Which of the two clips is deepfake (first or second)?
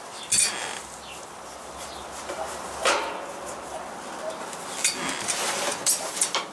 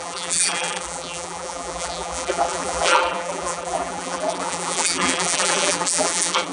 second